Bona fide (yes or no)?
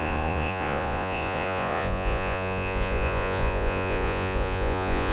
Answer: no